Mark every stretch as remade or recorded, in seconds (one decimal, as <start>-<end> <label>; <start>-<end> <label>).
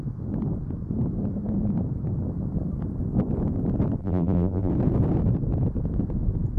0.0-4.0 recorded; 4.0-4.7 remade; 4.7-6.6 recorded